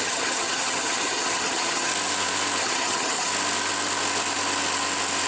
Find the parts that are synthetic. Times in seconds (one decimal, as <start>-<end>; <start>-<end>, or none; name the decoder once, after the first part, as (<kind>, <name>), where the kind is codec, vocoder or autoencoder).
0.0-1.9 (vocoder, HiFi-GAN); 2.6-3.3